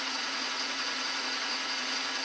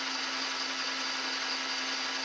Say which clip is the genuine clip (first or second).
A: second